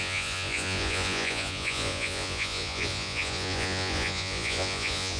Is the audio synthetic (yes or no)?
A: yes